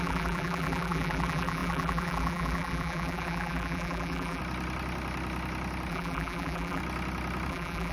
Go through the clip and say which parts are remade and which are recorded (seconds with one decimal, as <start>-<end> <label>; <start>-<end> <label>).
0.0-4.4 remade; 4.4-5.9 recorded; 5.9-6.8 remade; 6.8-7.5 recorded; 7.5-7.9 remade

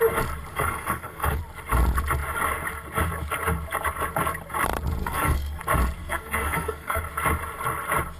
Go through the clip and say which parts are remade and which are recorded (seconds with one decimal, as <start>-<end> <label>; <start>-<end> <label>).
0.0-0.5 recorded; 0.5-1.4 remade; 1.4-5.0 recorded; 5.0-5.6 remade; 5.6-6.0 recorded; 6.0-7.0 remade; 7.0-8.2 recorded

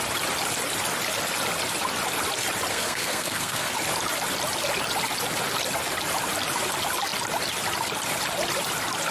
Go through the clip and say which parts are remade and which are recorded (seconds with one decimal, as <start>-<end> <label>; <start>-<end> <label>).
0.0-2.7 recorded; 2.7-3.7 remade; 3.7-9.1 recorded

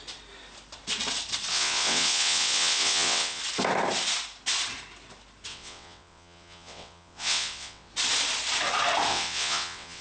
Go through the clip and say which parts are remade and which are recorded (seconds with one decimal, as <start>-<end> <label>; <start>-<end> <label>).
0.0-1.5 recorded; 1.5-3.4 remade; 3.4-5.5 recorded; 5.5-7.9 remade; 7.9-9.1 recorded; 9.1-10.0 remade